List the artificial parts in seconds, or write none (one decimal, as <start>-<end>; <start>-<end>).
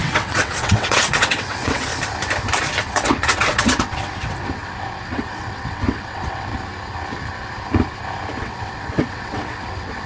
0.0-1.9; 2.8-6.5; 8.4-10.1